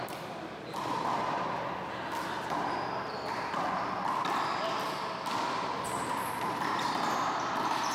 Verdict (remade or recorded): remade